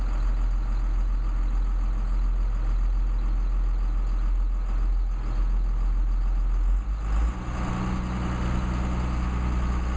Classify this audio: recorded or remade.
recorded